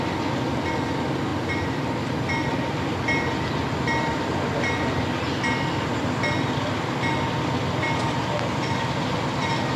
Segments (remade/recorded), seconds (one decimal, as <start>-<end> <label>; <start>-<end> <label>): 0.0-9.8 recorded

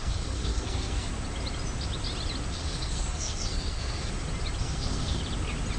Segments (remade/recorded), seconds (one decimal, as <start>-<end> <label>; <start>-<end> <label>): 0.0-1.1 remade; 1.1-2.6 recorded; 2.6-4.1 remade; 4.1-4.6 recorded; 4.6-5.2 remade; 5.2-5.8 recorded

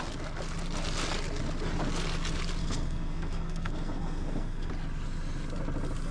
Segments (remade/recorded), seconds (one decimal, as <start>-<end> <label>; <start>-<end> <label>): 0.0-2.6 recorded; 2.6-4.7 remade; 4.7-6.1 recorded